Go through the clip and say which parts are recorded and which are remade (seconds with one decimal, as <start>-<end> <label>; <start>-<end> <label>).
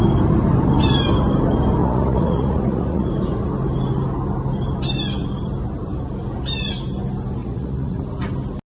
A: 0.0-1.8 recorded; 1.8-3.1 remade; 3.1-7.4 recorded; 7.4-8.0 remade; 8.0-8.7 recorded